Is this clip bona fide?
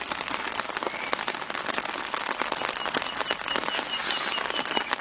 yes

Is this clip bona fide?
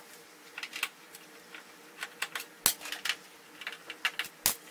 yes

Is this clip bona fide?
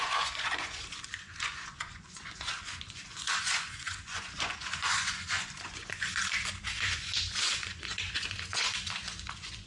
no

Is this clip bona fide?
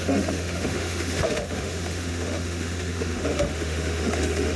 no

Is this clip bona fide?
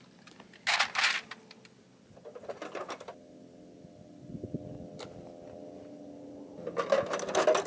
yes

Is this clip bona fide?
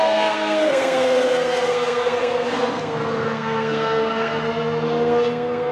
no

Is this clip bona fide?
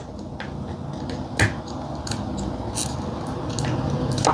yes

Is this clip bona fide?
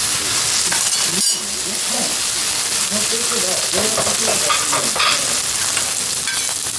yes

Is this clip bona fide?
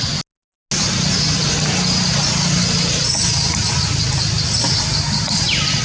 yes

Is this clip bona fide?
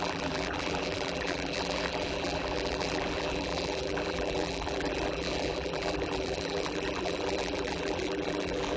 no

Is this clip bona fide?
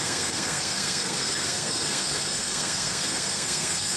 no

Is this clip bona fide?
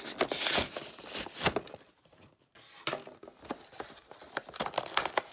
yes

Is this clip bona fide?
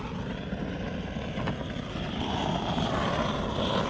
yes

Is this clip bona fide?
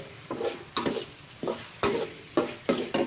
yes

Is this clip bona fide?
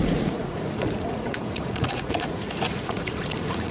no